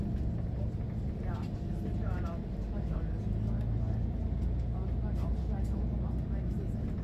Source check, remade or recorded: recorded